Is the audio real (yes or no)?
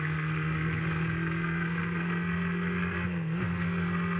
no